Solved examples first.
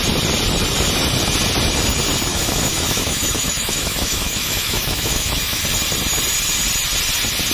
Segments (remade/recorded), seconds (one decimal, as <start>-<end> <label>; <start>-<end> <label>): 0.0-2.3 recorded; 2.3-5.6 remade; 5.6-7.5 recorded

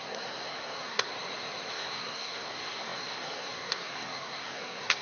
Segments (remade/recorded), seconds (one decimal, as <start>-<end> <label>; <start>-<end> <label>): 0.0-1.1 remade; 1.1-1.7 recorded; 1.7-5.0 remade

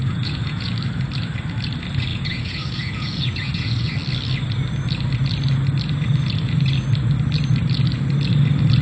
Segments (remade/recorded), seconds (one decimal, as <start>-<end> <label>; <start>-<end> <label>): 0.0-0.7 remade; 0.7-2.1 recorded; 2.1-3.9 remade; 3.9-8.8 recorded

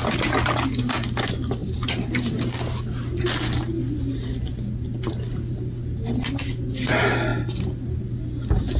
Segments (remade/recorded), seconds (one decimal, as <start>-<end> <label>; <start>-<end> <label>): 0.0-8.8 recorded

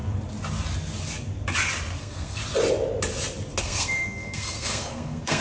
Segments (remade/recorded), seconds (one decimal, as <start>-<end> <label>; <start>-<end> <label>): 0.0-2.0 recorded; 2.0-2.4 remade; 2.4-3.6 recorded; 3.6-5.4 remade

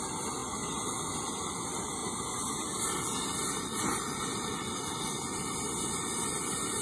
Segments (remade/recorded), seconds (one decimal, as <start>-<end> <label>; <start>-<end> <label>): 0.0-6.8 recorded

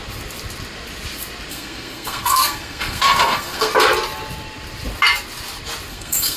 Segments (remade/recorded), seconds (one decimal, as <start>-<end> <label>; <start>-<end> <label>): 0.0-1.5 recorded; 1.5-3.7 remade; 3.7-5.9 recorded; 5.9-6.4 remade

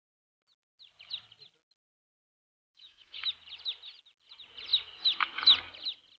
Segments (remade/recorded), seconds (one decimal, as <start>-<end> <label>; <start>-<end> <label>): 0.0-2.7 recorded; 2.7-3.3 remade; 3.3-6.2 recorded